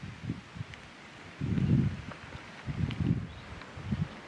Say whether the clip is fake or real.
real